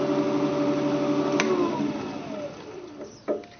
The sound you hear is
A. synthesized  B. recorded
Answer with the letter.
B